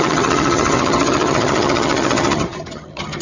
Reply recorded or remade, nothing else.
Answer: remade